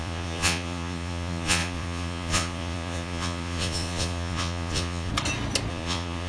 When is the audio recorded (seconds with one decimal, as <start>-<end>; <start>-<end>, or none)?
5.1-5.7